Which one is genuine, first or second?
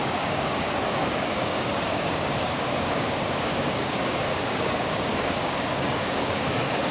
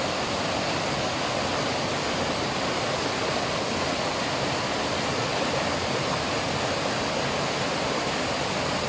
second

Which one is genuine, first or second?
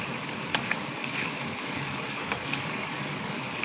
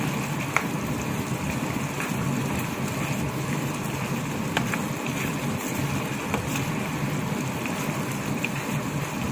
second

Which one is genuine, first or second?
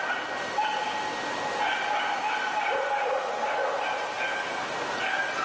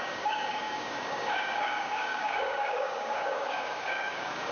first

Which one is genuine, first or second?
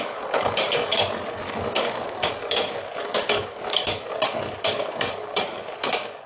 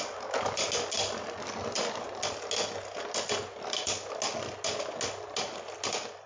second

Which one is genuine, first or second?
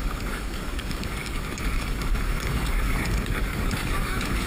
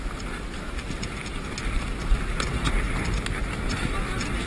second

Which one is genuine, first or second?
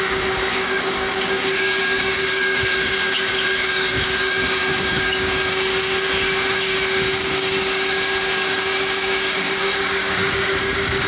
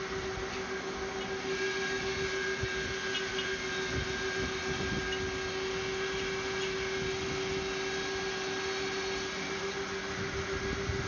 second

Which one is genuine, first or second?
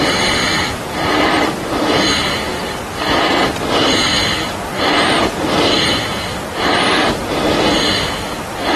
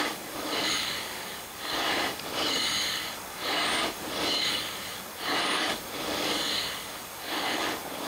first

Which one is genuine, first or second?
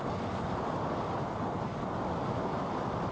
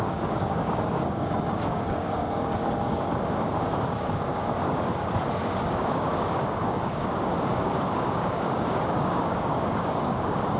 first